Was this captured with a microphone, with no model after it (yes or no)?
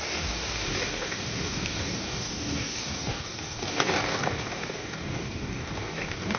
no